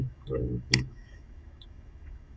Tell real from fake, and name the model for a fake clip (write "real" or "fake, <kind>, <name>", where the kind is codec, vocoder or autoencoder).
fake, autoencoder, DAC-VAE